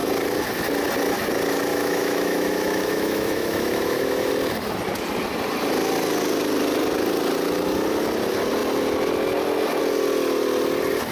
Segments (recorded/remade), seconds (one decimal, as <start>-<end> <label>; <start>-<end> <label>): 0.0-1.7 recorded; 1.7-4.3 remade; 4.3-11.1 recorded